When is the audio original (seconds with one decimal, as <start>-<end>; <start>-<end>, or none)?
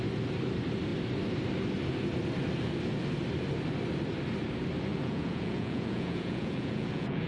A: 0.0-4.9